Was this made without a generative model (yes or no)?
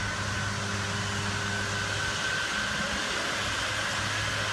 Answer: yes